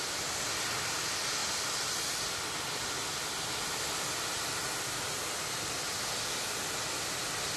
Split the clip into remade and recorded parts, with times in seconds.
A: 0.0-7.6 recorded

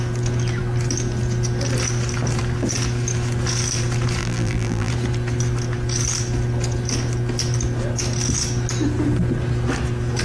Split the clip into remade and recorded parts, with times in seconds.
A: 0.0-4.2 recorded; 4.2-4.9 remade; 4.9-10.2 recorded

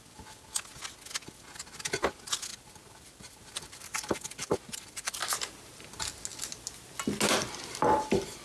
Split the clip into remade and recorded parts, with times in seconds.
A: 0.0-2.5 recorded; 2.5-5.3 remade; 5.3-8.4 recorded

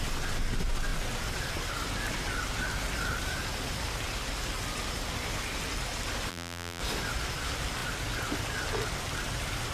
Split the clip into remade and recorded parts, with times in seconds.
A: 0.0-6.3 recorded; 6.3-6.8 remade; 6.8-9.7 recorded

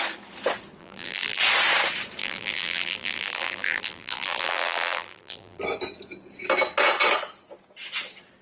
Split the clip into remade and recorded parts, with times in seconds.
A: 0.0-0.8 recorded; 0.8-1.4 remade; 1.4-2.2 recorded; 2.2-5.6 remade; 5.6-8.4 recorded

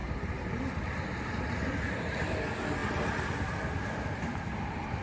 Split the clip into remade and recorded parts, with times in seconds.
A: 0.0-5.0 recorded

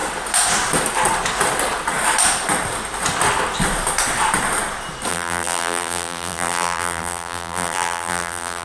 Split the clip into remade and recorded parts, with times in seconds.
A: 0.0-5.1 recorded; 5.1-8.6 remade